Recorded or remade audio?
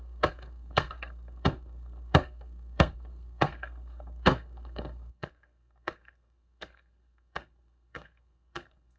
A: remade